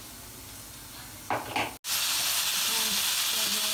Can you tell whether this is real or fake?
real